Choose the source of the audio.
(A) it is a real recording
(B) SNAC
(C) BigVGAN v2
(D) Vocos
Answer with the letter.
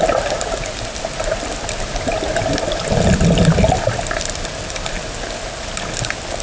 A